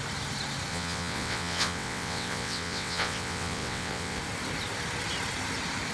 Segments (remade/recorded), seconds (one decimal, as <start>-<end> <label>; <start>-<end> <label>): 0.0-0.7 recorded; 0.7-4.2 remade; 4.2-5.9 recorded